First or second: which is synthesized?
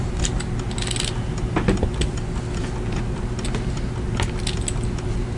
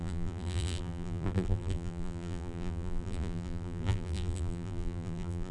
second